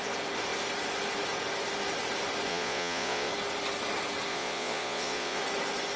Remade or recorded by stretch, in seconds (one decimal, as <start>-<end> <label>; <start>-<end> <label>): 0.0-2.5 recorded; 2.5-3.3 remade; 3.3-4.3 recorded; 4.3-5.4 remade; 5.4-6.0 recorded